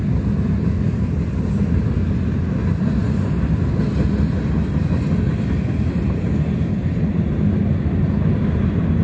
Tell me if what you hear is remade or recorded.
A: recorded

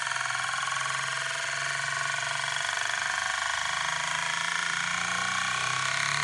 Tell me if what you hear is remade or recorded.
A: recorded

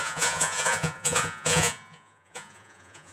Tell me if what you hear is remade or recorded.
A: remade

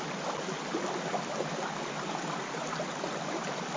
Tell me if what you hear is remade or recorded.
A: recorded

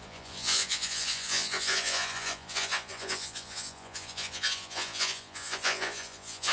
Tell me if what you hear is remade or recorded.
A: remade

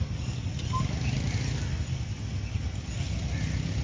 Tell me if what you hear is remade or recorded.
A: recorded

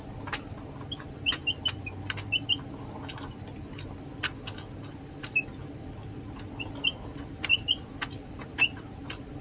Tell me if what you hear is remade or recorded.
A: recorded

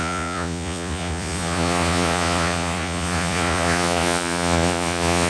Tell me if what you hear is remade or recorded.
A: remade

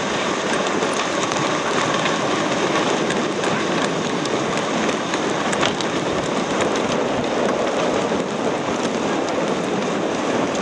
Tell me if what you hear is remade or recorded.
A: recorded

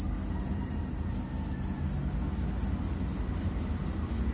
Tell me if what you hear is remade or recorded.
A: recorded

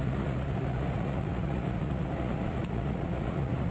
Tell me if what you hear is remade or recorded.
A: remade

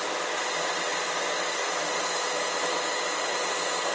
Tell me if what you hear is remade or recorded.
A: recorded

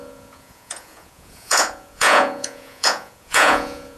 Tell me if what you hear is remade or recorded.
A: remade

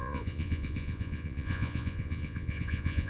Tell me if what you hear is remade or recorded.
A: remade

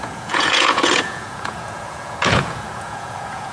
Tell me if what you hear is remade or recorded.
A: remade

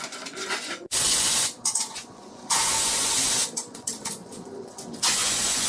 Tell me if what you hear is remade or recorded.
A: remade